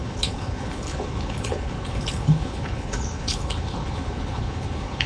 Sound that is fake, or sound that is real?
fake